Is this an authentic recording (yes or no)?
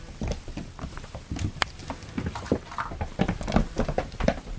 yes